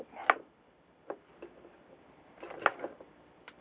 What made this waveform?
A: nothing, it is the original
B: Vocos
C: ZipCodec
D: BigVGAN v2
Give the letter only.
A